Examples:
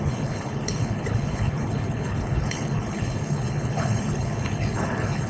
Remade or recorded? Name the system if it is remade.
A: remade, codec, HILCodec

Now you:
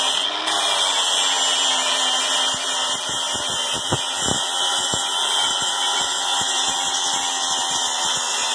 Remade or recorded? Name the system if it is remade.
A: recorded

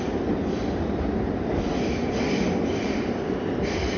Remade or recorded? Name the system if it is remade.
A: recorded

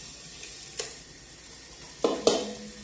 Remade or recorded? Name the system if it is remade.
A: recorded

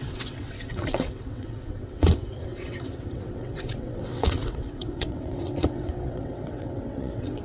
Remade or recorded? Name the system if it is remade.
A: remade, vocoder, WaveNeXt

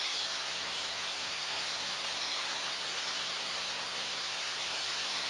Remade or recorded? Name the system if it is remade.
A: remade, codec, SNAC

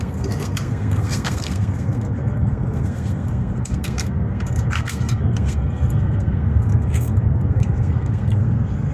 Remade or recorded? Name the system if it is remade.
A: remade, codec, SNAC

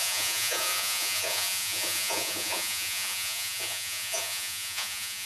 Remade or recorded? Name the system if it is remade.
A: remade, vocoder, Vocos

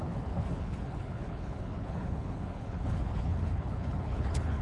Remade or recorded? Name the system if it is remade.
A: remade, codec, HILCodec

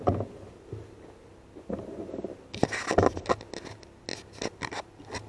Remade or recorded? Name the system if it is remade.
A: recorded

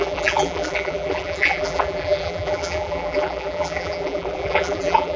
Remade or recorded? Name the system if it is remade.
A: remade, vocoder, BigVGAN v2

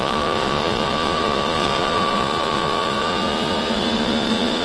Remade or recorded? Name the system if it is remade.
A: remade, vocoder, Vocos